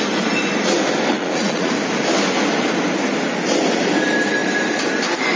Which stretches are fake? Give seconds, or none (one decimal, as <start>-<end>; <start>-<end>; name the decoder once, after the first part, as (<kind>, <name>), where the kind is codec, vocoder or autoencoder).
1.1-1.7 (vocoder, Vocos)